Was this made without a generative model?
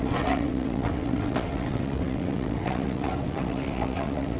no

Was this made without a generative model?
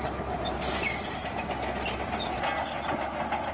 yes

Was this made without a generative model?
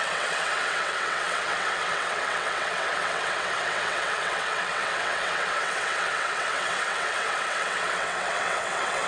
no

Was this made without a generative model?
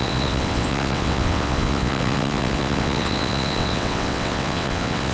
no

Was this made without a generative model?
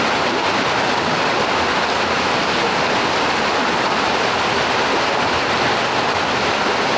yes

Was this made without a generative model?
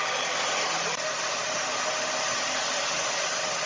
yes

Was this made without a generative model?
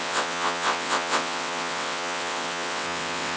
no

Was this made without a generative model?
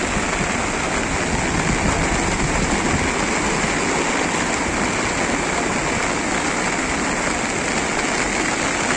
yes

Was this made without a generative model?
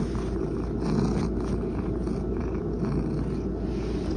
yes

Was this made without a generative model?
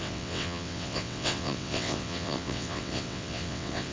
no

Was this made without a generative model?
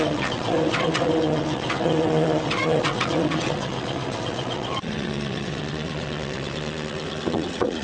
no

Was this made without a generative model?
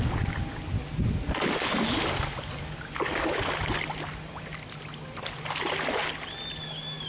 yes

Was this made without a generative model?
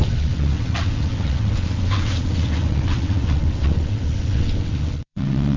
no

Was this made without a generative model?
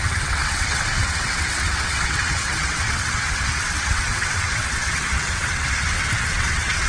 no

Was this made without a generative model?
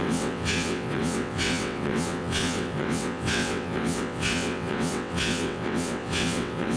no